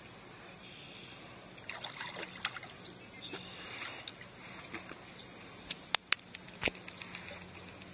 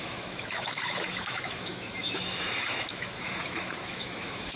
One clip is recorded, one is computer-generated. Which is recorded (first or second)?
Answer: first